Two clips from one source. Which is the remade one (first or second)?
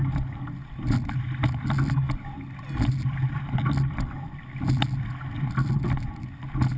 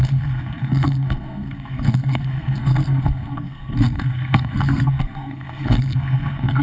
second